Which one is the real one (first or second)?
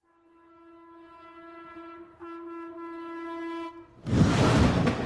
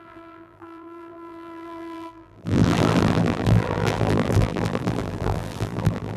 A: first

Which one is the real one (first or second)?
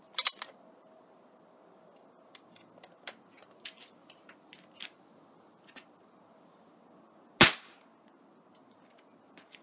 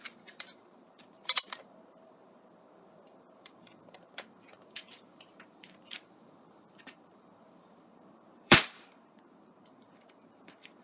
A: first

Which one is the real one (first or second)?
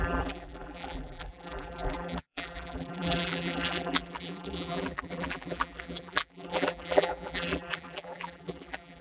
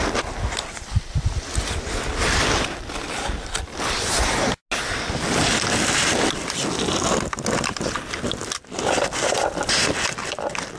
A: second